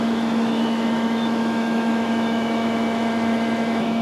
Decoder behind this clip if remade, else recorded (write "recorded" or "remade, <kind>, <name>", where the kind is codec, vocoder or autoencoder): remade, autoencoder, DAC-VAE